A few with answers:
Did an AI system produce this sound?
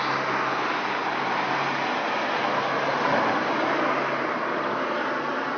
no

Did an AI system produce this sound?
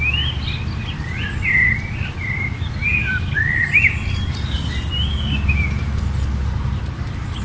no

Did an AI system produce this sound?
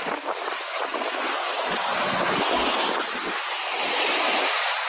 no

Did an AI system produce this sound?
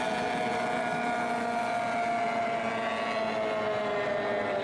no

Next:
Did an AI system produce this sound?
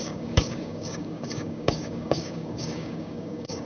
yes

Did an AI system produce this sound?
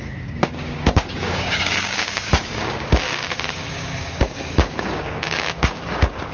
yes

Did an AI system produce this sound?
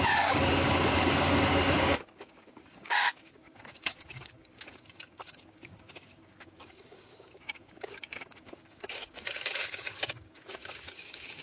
yes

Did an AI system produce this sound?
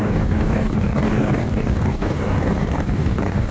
yes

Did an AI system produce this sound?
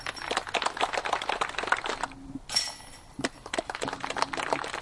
no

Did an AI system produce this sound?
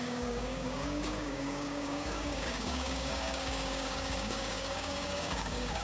yes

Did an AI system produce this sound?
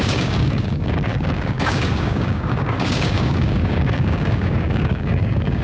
yes